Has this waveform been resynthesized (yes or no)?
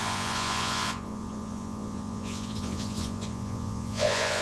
yes